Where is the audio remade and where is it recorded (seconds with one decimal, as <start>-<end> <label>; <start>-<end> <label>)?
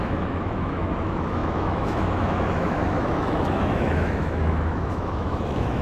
0.0-5.8 remade